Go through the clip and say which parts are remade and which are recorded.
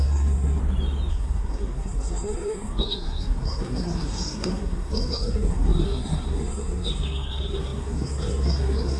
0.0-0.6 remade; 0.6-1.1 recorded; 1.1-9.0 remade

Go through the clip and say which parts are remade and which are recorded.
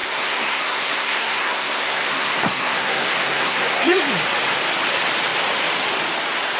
0.0-4.0 remade; 4.0-6.6 recorded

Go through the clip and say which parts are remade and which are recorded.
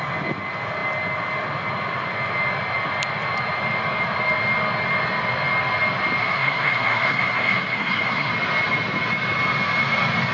0.0-6.2 recorded; 6.2-8.3 remade; 8.3-10.3 recorded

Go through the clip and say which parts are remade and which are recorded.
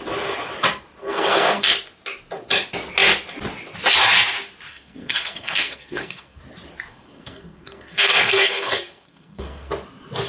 0.0-1.0 recorded; 1.0-1.7 remade; 1.7-4.7 recorded; 4.7-6.4 remade; 6.4-6.9 recorded; 6.9-9.7 remade; 9.7-10.3 recorded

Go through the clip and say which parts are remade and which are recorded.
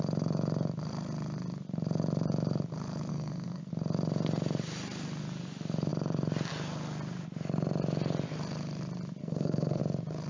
0.0-3.1 recorded; 3.1-3.7 remade; 3.7-9.2 recorded; 9.2-9.8 remade; 9.8-10.3 recorded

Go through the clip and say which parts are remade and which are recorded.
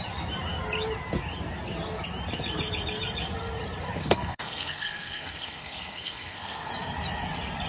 0.0-4.0 recorded; 4.0-6.7 remade; 6.7-7.7 recorded